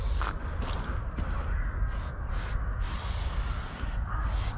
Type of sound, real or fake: real